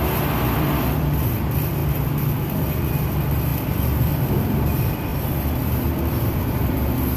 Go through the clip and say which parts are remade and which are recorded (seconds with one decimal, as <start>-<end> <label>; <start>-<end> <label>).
0.0-1.8 remade; 1.8-2.6 recorded; 2.6-5.1 remade; 5.1-6.4 recorded; 6.4-7.2 remade